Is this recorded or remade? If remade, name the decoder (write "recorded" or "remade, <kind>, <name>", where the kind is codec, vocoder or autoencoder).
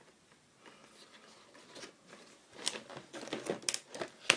recorded